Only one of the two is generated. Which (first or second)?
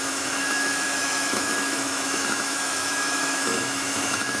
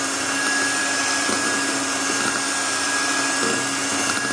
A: first